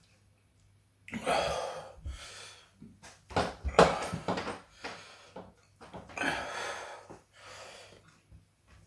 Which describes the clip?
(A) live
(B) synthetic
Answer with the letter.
A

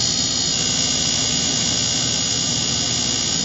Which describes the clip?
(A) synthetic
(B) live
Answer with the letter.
B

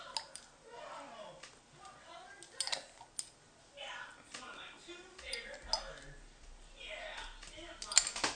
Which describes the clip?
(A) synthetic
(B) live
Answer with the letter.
B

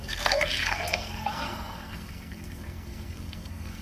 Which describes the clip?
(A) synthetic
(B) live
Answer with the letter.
A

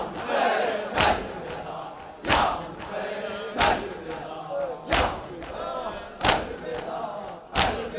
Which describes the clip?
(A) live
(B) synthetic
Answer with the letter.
A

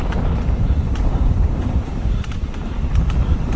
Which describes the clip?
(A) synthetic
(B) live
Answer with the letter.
A